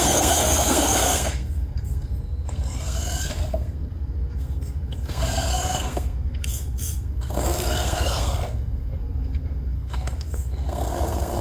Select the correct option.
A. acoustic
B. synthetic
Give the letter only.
B